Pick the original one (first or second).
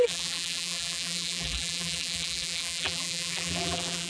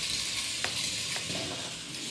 second